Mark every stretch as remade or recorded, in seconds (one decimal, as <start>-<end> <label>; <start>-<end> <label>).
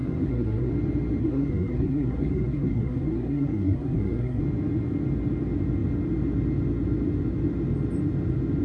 0.0-0.7 remade; 0.7-1.2 recorded; 1.2-4.4 remade; 4.4-8.6 recorded